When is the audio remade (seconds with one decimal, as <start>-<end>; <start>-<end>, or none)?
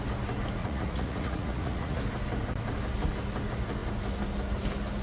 0.6-2.0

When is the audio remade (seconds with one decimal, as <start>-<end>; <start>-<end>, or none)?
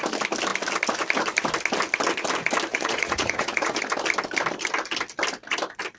2.7-3.8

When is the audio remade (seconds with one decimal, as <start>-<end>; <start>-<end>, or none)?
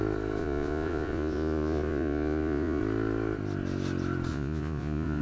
0.4-2.8; 4.3-5.2